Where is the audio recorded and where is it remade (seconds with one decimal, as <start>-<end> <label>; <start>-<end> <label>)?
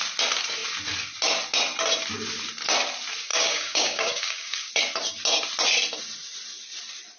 0.0-3.3 recorded; 3.3-4.7 remade; 4.7-7.2 recorded